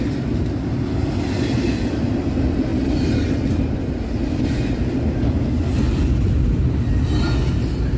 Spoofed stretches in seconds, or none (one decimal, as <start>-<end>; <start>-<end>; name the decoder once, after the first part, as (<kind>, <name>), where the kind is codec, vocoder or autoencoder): none